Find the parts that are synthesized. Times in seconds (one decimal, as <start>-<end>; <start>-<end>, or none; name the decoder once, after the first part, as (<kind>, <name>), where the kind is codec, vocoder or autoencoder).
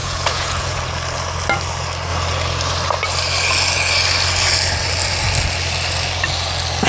0.0-0.8 (vocoder, Vocos)